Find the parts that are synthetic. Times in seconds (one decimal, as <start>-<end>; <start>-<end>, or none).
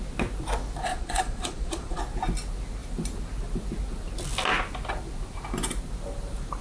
0.9-2.0